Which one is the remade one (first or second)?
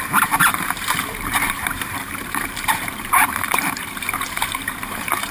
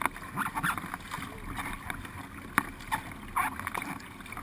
first